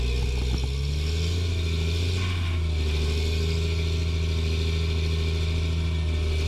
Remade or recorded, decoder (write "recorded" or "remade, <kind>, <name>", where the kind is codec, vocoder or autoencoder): recorded